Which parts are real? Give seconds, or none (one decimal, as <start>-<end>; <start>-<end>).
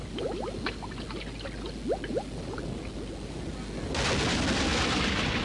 0.0-5.4